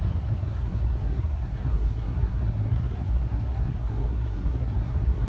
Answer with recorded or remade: remade